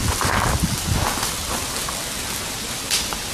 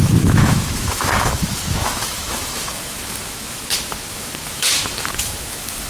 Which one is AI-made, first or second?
second